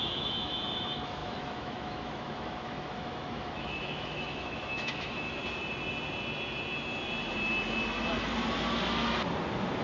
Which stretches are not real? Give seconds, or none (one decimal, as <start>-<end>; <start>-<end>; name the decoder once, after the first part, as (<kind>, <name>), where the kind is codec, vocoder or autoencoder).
0.0-5.4 (autoencoder, DAC-VAE)